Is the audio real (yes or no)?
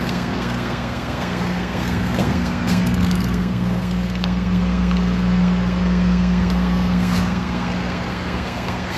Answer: no